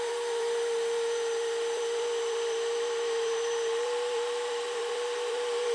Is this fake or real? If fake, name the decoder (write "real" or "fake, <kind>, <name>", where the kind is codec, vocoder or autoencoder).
fake, vocoder, BigVGAN v2